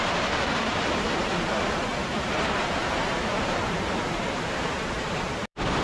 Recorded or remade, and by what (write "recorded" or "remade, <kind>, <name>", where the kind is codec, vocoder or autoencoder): remade, vocoder, BigVGAN v2